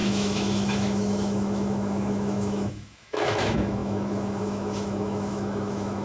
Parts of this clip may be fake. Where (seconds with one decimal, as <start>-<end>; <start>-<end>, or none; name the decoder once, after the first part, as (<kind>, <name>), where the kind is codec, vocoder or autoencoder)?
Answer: 0.0-6.0 (autoencoder, DAC-VAE)